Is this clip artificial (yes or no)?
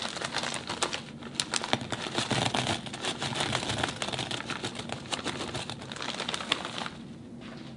no